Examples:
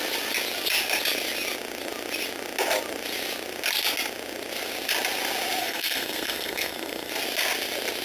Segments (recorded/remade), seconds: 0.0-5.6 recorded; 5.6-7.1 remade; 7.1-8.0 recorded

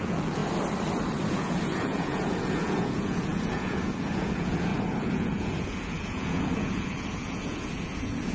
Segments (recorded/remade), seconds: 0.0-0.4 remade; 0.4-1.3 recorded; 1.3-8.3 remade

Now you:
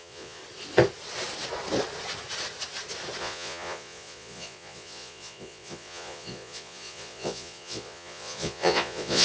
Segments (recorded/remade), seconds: 0.0-0.4 remade; 0.4-3.2 recorded; 3.2-9.2 remade

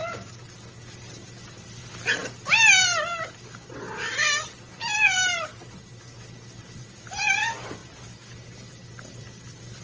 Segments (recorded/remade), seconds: 0.0-9.8 recorded

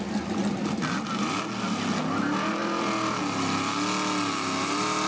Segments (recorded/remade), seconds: 0.0-5.1 recorded